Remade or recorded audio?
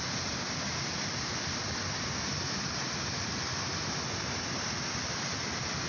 recorded